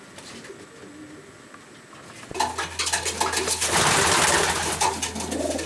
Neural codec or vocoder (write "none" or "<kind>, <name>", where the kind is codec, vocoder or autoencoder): none